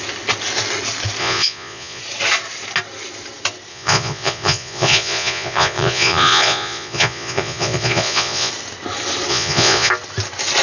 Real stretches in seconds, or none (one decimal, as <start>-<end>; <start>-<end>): 0.0-1.2; 2.0-3.7; 8.5-9.3; 9.9-10.6